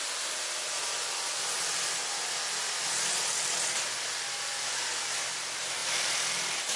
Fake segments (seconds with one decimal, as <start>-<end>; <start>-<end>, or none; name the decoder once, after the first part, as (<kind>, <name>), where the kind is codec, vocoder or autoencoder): none